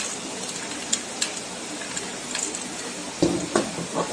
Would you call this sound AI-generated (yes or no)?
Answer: no